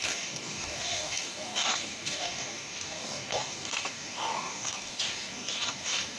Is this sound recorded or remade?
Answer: remade